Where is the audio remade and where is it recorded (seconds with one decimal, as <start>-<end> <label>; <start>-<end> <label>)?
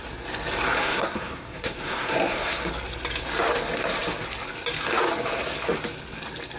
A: 0.0-0.7 recorded; 0.7-2.7 remade; 2.7-6.6 recorded